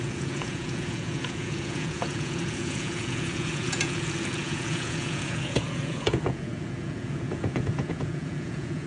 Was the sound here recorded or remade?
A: remade